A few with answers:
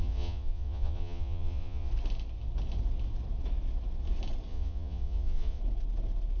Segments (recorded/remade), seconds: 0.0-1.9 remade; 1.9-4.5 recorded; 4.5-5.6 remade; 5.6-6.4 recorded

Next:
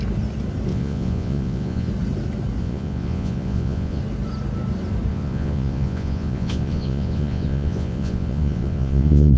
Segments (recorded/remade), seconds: 0.0-0.7 recorded; 0.7-1.9 remade; 1.9-2.6 recorded; 2.6-4.0 remade; 4.0-5.1 recorded; 5.1-9.4 remade

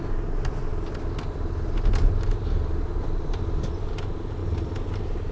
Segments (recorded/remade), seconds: 0.0-5.3 recorded

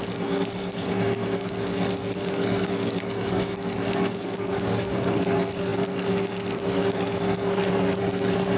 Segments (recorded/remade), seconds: 0.0-8.6 remade